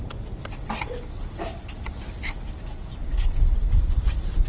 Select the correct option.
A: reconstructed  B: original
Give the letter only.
B